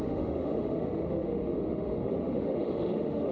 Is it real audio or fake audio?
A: fake